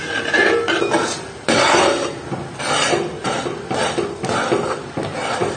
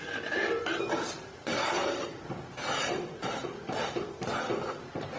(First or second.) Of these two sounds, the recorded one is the first